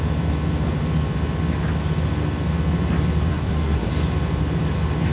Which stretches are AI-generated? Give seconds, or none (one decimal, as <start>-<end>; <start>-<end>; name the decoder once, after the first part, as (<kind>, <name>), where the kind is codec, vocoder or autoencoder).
3.3-3.9 (codec, SNAC)